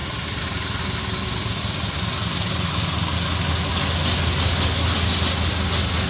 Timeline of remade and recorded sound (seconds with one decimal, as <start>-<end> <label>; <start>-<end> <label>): 0.0-6.1 recorded